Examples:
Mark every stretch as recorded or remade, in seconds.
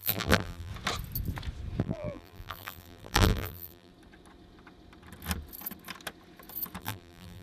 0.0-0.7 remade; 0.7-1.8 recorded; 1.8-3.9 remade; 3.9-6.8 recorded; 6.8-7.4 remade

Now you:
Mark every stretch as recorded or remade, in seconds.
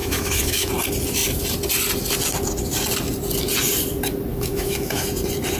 0.0-0.7 remade; 0.7-4.3 recorded; 4.3-5.0 remade; 5.0-5.6 recorded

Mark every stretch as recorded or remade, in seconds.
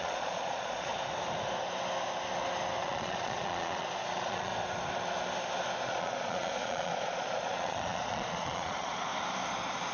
0.0-0.9 remade; 0.9-2.8 recorded; 2.8-4.5 remade; 4.5-5.8 recorded; 5.8-9.1 remade; 9.1-9.9 recorded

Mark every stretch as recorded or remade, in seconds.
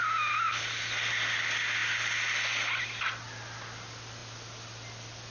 0.0-5.3 recorded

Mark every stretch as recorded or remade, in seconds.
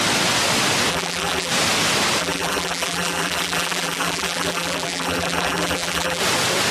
0.0-0.9 recorded; 0.9-1.5 remade; 1.5-2.2 recorded; 2.2-6.2 remade; 6.2-6.7 recorded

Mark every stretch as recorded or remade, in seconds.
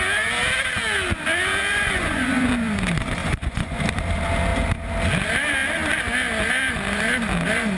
0.0-1.7 recorded; 1.7-2.5 remade; 2.5-3.2 recorded; 3.2-3.8 remade; 3.8-7.8 recorded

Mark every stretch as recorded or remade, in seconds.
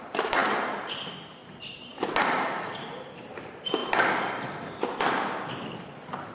0.0-6.3 recorded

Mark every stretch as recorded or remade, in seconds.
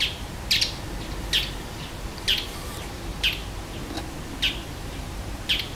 0.0-5.8 recorded